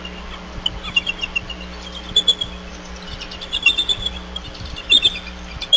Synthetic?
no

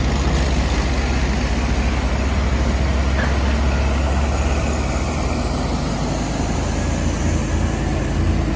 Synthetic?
no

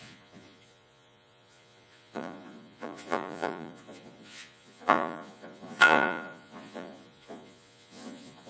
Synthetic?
yes